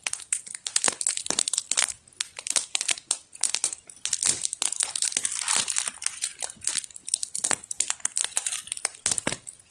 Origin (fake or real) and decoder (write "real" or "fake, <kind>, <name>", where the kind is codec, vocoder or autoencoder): real